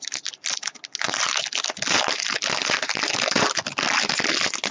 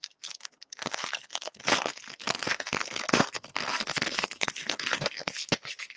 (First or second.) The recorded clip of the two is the first